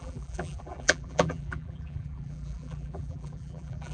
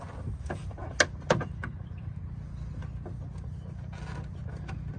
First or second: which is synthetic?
first